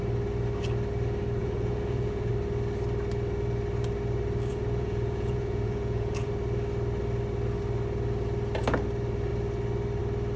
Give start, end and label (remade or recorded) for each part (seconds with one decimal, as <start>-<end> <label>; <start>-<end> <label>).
0.0-1.4 recorded; 1.4-2.3 remade; 2.3-4.5 recorded; 4.5-6.3 remade; 6.3-10.4 recorded